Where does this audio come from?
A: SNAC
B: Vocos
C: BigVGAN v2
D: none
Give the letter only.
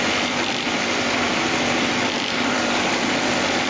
C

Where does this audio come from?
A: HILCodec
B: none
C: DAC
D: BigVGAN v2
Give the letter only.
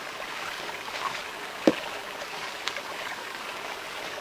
C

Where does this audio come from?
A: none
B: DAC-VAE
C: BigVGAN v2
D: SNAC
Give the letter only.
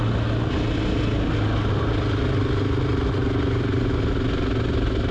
A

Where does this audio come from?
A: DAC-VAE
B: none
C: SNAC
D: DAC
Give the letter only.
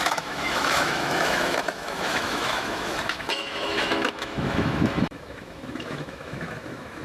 A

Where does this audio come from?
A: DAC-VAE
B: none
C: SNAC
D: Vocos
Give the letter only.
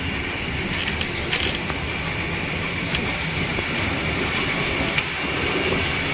B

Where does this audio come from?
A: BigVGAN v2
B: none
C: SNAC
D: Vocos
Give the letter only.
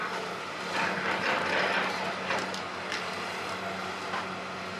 A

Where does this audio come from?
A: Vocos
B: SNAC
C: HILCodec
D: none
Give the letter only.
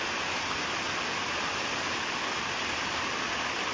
D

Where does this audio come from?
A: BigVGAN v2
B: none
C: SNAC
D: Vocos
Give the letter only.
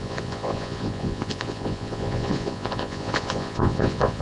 D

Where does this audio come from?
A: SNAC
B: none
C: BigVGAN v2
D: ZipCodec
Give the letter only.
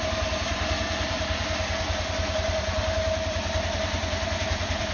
C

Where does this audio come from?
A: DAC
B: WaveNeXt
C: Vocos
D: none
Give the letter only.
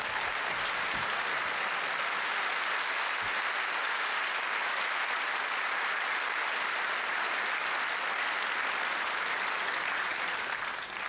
D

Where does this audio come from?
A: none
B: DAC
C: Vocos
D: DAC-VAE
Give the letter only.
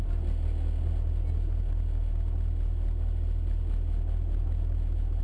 A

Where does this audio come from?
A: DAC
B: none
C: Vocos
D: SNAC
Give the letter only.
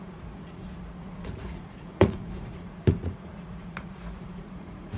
C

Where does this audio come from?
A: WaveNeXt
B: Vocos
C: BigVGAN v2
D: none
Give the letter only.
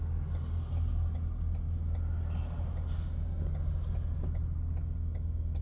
D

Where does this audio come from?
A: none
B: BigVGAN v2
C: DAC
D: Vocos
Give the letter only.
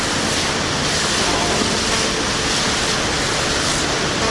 A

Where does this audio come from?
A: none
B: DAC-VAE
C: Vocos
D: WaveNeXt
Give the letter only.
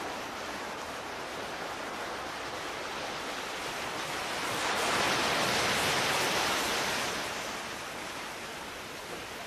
A